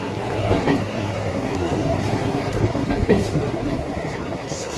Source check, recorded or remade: remade